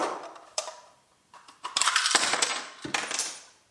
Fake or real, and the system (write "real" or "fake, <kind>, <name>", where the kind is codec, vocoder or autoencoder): fake, vocoder, BigVGAN v2